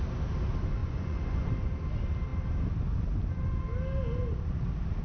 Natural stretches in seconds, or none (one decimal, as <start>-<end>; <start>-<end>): 0.0-0.8; 1.5-5.0